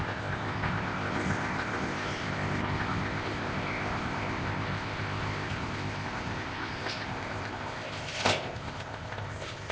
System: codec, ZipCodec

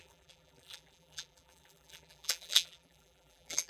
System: vocoder, BigVGAN v2